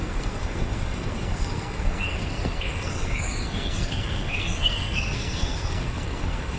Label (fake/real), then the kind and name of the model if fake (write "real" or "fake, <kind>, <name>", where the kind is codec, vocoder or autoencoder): fake, codec, SNAC